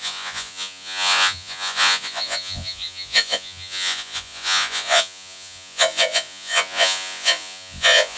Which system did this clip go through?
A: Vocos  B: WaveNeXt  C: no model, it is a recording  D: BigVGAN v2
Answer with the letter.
A